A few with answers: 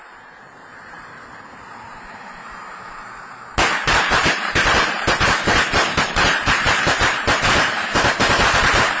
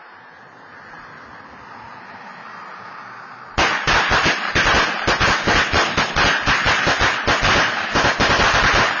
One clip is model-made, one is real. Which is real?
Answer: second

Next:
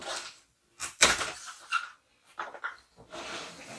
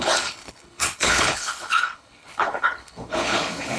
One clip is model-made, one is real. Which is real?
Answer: first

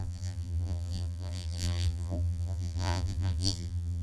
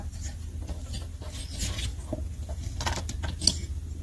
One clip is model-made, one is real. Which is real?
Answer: second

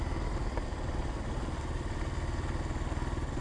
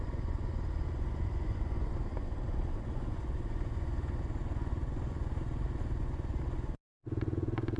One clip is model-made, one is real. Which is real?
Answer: first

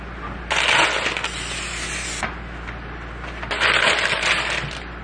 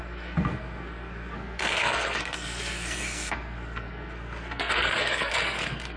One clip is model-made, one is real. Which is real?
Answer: first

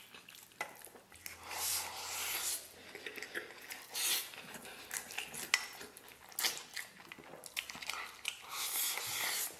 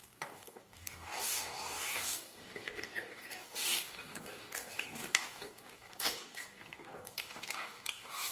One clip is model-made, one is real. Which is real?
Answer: first